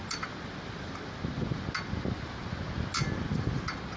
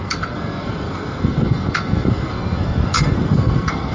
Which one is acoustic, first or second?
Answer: first